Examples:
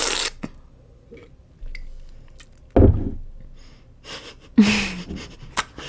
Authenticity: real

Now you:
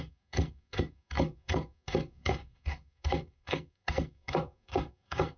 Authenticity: fake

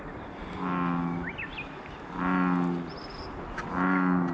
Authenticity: real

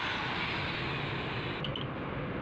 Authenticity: real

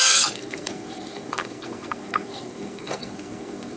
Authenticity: fake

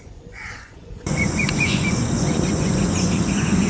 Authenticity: fake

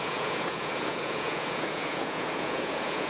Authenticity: fake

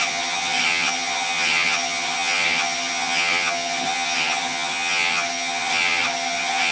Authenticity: fake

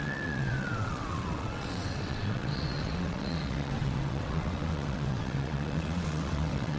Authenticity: fake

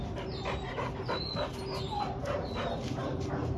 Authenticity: real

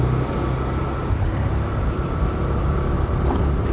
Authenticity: real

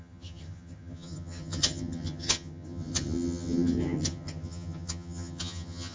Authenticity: fake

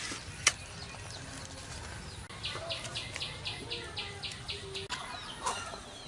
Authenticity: real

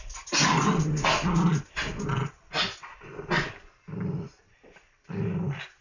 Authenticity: real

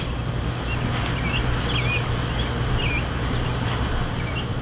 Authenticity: real